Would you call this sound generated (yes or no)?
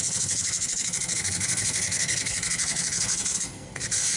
yes